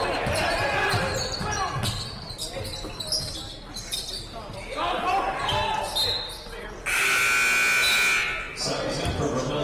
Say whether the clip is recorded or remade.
recorded